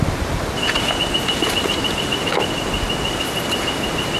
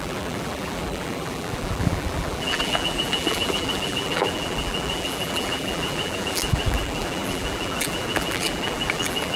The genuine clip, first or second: first